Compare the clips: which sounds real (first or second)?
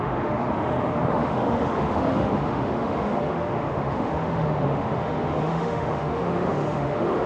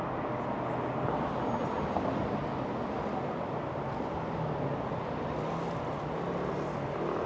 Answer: second